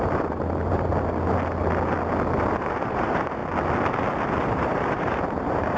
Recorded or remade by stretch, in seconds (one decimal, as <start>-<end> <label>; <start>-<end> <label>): 0.0-0.9 remade; 0.9-2.4 recorded; 2.4-3.4 remade; 3.4-4.4 recorded; 4.4-5.8 remade